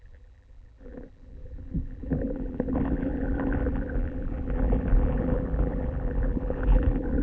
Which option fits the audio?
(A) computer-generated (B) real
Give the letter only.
A